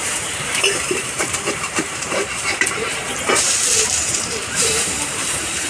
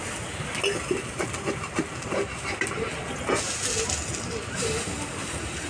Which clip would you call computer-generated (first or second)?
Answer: first